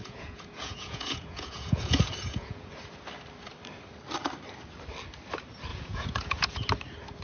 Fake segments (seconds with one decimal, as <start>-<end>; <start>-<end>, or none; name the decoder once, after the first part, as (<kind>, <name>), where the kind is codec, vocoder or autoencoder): 0.0-2.7 (vocoder, Vocos); 5.7-6.7